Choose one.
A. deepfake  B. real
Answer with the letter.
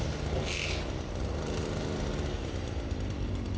B